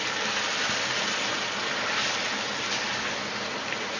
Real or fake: real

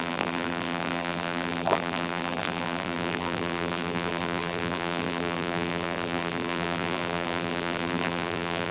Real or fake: fake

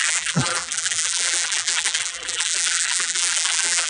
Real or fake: fake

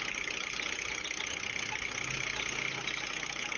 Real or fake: real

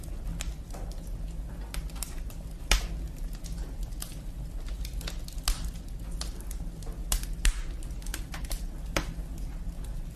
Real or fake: real